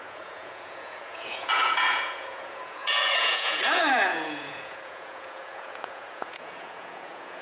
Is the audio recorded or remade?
remade